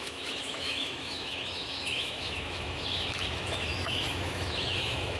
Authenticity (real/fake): fake